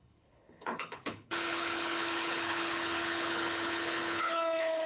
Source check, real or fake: fake